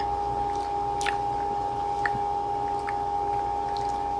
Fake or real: real